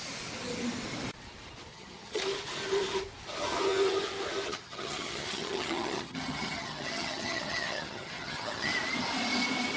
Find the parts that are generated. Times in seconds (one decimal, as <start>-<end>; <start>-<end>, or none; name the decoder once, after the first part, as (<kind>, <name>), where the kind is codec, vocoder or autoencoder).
1.7-2.2 (vocoder, HiFi-GAN); 4.5-8.7